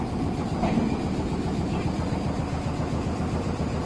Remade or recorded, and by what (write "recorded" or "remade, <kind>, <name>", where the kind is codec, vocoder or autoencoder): recorded